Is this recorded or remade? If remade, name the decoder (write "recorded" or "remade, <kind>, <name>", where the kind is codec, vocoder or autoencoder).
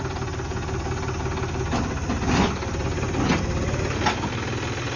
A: recorded